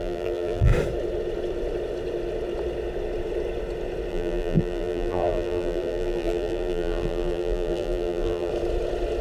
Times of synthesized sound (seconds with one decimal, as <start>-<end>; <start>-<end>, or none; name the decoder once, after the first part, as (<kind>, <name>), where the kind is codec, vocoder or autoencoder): 0.0-0.7 (vocoder, BigVGAN v2); 4.1-8.5